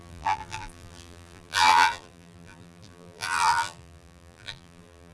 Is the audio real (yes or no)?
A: no